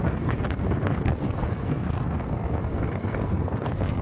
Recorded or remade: remade